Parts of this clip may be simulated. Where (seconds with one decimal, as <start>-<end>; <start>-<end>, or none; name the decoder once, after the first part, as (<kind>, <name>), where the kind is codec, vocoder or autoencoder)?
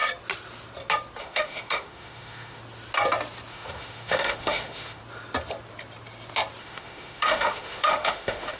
1.2-2.6 (autoencoder, DAC-VAE); 3.5-5.0; 6.6-8.6